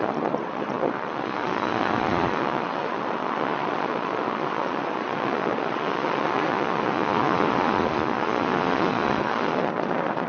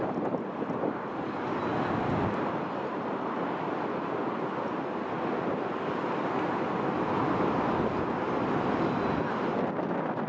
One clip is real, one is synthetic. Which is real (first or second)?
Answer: second